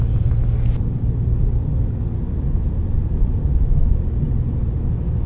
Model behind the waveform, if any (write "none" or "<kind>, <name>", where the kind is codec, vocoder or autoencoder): none